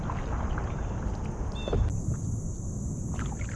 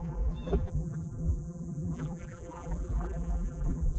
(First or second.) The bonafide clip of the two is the first